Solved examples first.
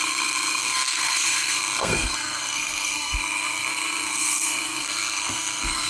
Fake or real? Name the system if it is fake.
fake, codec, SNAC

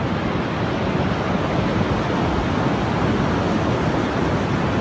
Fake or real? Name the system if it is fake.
real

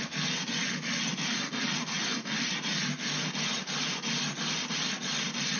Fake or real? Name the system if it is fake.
real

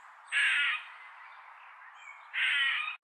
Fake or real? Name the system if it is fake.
real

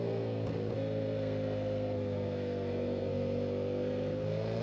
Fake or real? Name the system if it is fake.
fake, codec, SNAC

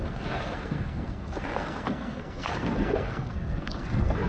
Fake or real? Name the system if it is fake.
fake, codec, SNAC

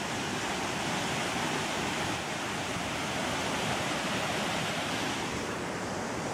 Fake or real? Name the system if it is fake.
real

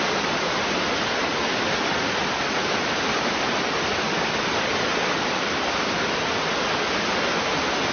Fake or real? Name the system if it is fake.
real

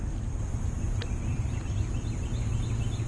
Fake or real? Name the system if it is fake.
real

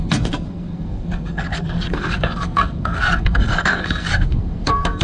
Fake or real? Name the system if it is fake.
fake, codec, SNAC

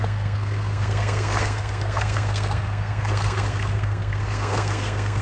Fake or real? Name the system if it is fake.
fake, codec, SNAC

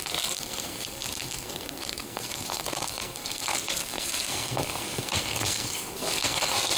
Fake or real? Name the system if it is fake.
fake, codec, SNAC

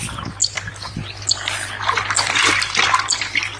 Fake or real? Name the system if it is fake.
real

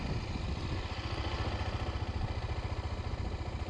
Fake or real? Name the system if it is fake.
real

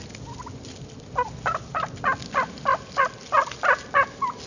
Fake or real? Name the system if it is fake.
real